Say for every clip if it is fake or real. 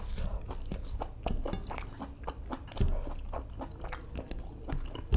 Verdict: real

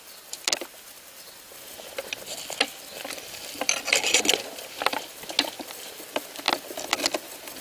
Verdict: real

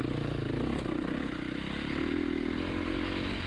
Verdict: real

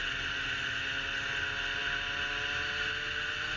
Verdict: real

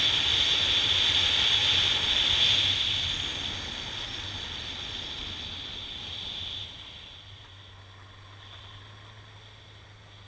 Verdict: real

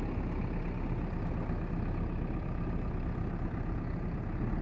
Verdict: real